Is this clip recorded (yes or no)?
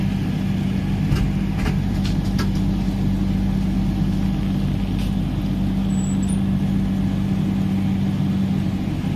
yes